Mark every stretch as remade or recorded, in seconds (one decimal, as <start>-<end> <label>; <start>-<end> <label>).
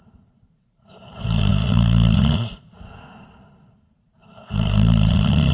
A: 0.0-5.5 remade